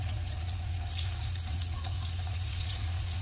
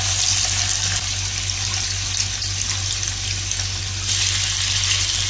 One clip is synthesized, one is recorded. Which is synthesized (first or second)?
first